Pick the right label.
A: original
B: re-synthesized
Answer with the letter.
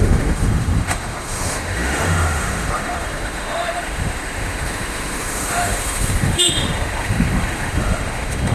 B